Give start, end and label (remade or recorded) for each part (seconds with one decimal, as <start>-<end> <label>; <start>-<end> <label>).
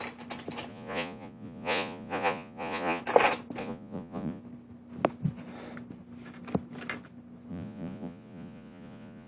0.0-0.7 recorded; 0.7-3.0 remade; 3.0-3.6 recorded; 3.6-4.4 remade; 4.4-7.5 recorded; 7.5-9.3 remade